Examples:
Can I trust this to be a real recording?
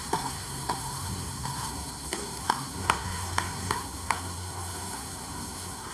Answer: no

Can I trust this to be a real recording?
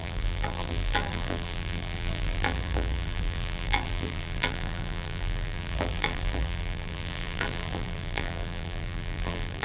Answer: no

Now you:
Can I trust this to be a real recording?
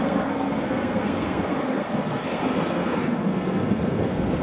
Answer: no